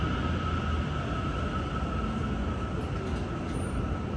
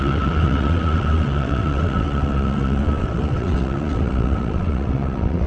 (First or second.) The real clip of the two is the first